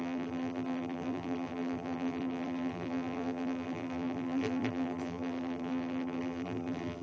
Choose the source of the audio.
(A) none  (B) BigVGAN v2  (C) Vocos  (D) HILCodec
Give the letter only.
B